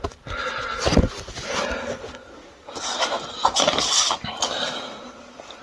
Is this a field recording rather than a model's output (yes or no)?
yes